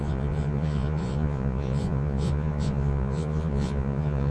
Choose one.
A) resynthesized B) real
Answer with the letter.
A